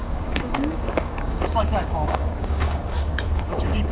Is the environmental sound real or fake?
fake